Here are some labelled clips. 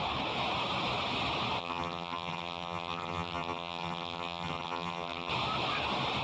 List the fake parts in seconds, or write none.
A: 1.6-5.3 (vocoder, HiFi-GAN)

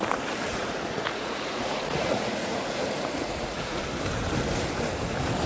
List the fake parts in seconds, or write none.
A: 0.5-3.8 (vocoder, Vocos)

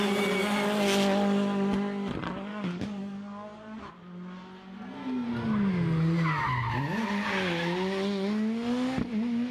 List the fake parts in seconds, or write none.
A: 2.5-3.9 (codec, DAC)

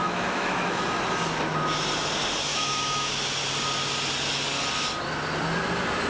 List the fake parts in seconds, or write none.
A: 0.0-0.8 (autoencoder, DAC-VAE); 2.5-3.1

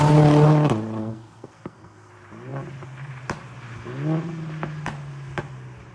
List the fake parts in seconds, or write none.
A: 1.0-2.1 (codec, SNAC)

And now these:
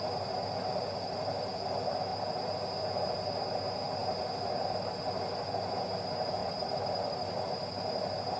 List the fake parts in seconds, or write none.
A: 6.4-7.5 (vocoder, BigVGAN v2)

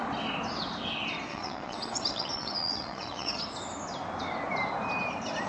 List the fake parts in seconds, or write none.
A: 1.3-3.4 (vocoder, WaveNeXt)

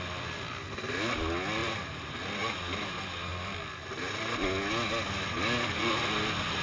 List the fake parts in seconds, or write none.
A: 1.6-2.2 (vocoder, BigVGAN v2)